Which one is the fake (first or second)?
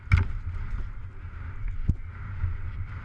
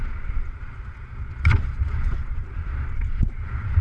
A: second